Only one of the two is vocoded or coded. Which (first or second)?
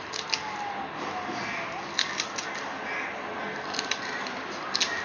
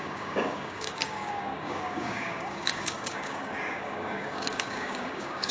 second